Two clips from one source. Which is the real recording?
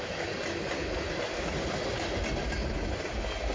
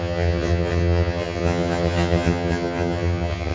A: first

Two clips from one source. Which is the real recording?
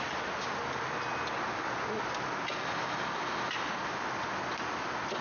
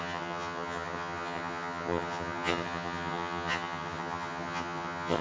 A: first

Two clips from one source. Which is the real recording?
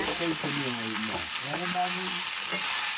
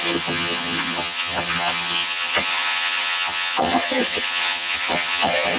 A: first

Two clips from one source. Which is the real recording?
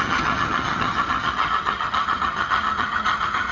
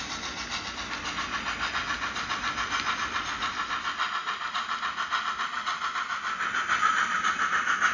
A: second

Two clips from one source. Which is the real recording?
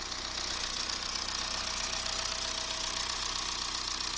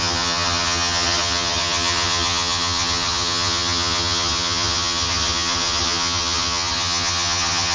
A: first